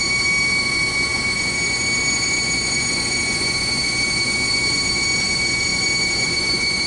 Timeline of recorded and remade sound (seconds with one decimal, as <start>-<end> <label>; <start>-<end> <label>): 0.0-6.9 remade